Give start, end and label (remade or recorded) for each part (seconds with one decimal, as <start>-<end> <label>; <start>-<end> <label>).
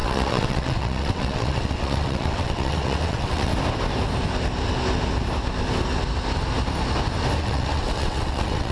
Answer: 0.0-3.5 remade; 3.5-7.4 recorded; 7.4-8.7 remade